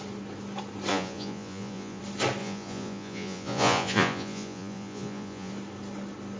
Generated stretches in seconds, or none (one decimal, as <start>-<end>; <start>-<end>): 0.9-2.0; 2.4-5.5